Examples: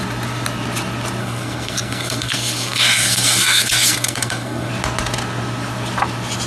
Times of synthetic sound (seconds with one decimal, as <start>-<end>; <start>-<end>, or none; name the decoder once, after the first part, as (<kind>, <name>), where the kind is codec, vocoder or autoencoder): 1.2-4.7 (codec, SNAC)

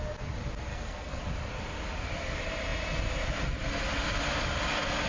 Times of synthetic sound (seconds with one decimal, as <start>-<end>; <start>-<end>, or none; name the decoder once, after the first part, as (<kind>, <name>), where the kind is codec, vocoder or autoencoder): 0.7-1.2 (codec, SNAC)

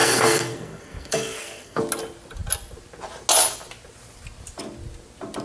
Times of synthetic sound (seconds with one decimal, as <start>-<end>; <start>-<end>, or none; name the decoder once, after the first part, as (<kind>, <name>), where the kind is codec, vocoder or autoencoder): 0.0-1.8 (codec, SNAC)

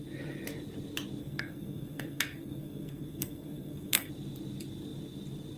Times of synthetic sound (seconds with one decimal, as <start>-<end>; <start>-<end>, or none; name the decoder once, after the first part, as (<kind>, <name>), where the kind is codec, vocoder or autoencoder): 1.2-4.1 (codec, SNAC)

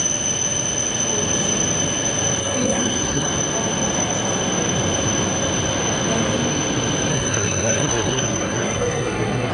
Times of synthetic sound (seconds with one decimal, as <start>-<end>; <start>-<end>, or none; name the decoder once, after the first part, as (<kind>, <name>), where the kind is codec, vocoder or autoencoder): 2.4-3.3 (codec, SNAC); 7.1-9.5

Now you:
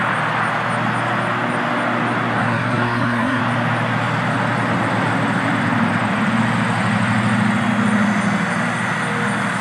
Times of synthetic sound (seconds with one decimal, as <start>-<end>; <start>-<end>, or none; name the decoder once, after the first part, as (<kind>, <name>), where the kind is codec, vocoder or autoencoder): 2.4-3.4 (codec, SNAC)

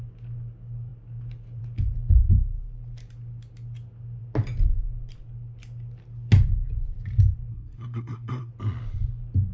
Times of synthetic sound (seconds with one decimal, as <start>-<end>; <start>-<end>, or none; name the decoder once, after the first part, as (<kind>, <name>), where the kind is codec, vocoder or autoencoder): 7.5-8.5 (codec, SNAC)